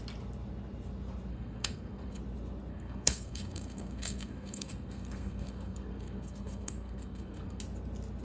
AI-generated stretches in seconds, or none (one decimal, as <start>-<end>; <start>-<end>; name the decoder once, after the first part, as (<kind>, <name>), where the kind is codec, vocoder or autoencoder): 1.3-2.2 (codec, SNAC); 2.7-7.6

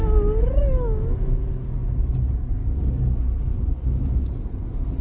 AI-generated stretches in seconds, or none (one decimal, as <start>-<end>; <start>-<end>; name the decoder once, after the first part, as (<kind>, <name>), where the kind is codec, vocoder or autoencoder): none

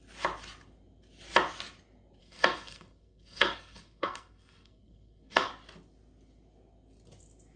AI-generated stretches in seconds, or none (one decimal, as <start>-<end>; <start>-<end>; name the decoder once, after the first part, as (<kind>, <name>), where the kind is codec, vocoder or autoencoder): 2.2-5.5 (codec, SNAC)

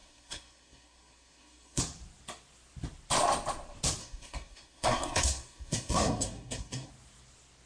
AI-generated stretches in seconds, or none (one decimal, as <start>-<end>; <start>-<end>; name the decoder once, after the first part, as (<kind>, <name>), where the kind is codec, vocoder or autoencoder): 0.0-1.8 (codec, SNAC); 4.0-6.9

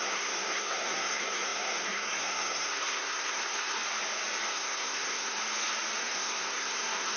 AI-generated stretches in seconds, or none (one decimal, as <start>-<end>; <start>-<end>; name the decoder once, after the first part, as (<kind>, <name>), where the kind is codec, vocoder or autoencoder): 0.0-3.8 (codec, SNAC); 4.5-5.4; 6.0-7.2

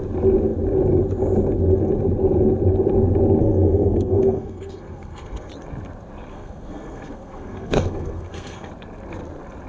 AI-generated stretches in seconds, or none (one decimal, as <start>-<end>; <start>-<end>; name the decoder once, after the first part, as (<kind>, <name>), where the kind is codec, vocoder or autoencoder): 3.4-5.5 (codec, SNAC); 6.3-8.7

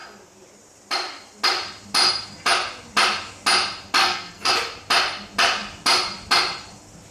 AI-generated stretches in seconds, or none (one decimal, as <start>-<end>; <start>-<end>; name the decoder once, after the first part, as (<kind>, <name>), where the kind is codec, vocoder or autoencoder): 4.0-4.5 (codec, SNAC)